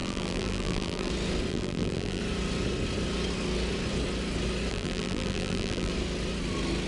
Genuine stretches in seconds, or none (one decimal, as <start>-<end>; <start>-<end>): 1.1-1.5; 2.2-4.7; 5.9-6.9